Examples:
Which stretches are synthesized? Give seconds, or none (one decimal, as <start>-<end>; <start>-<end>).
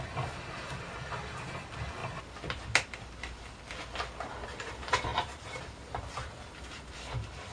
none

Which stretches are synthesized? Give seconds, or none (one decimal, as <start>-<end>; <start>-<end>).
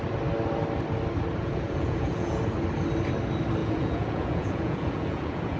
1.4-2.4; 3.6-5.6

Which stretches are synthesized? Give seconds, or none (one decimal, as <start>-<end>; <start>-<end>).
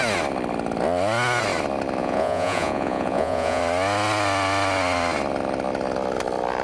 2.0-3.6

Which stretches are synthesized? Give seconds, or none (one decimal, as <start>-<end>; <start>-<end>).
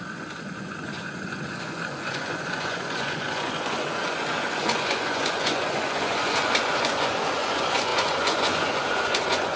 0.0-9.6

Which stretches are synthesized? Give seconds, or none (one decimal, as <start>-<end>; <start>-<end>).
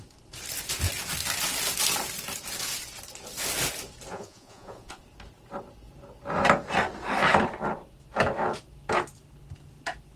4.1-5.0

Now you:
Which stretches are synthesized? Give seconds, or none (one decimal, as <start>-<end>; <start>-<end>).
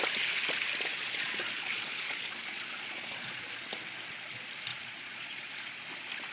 0.9-3.5; 4.7-5.5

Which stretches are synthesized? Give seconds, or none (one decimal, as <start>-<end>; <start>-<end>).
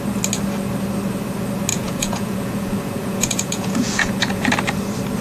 1.7-4.5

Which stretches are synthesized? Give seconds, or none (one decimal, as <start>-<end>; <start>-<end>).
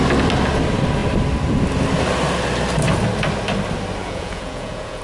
4.0-5.0